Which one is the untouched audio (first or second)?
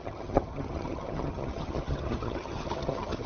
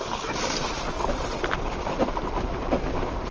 second